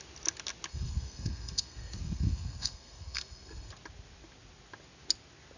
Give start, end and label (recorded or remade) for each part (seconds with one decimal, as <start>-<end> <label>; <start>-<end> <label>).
0.0-0.7 recorded; 0.7-3.7 remade; 3.7-5.6 recorded